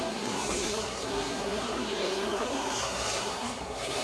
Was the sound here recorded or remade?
remade